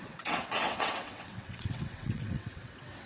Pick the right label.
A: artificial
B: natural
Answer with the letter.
A